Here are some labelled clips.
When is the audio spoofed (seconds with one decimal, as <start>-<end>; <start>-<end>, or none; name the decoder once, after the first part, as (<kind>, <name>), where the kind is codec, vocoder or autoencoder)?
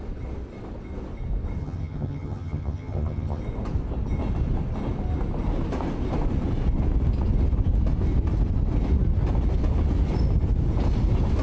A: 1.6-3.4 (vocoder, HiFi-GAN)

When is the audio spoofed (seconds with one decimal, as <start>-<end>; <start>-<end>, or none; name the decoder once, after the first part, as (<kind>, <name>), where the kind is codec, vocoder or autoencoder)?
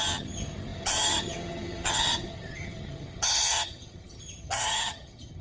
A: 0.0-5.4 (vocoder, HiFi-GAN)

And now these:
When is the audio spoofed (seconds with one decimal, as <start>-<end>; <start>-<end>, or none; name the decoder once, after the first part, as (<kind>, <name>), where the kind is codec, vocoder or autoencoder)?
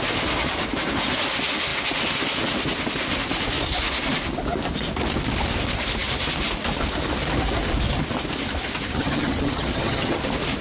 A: 8.9-10.2 (vocoder, HiFi-GAN)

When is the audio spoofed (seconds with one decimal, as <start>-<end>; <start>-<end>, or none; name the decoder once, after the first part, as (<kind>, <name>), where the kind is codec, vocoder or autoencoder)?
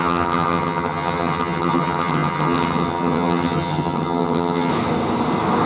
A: 0.0-4.7 (vocoder, HiFi-GAN)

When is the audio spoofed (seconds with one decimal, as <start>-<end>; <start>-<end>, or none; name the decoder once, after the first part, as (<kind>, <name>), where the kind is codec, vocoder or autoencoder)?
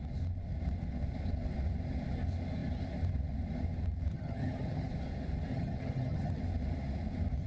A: 4.1-4.9 (vocoder, HiFi-GAN); 5.5-6.4